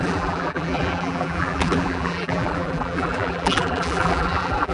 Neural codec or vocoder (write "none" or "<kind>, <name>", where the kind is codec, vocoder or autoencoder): vocoder, BigVGAN v2